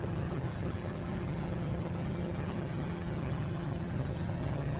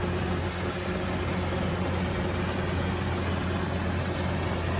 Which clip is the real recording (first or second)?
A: second